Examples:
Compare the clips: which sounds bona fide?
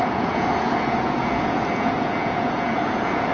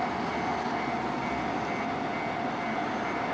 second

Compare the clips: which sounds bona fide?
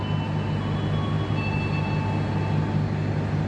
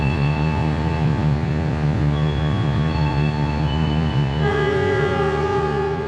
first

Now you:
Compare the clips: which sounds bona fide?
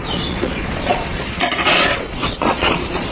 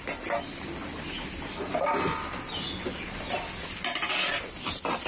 second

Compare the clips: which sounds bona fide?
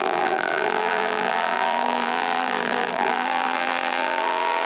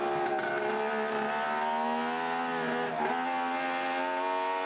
second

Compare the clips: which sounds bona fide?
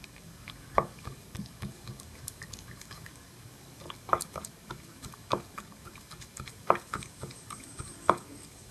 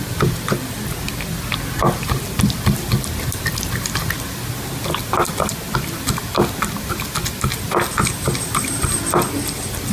second